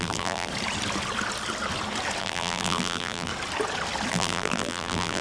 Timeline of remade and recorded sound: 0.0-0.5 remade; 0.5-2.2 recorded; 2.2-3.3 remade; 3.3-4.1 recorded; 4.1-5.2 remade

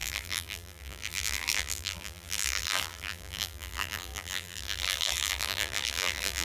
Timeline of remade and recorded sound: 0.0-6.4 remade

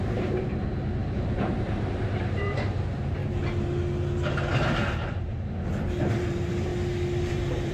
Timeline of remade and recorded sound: 0.0-3.2 remade; 3.2-4.5 recorded; 4.5-5.3 remade; 5.3-6.0 recorded; 6.0-6.7 remade; 6.7-7.3 recorded; 7.3-7.7 remade